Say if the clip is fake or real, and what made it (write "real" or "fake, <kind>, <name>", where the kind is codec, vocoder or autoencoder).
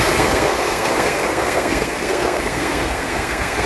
fake, codec, SNAC